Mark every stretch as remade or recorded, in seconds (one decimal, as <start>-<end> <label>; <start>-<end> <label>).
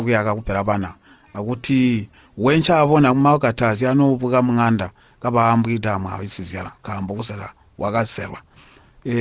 0.0-9.2 recorded